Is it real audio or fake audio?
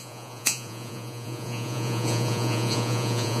fake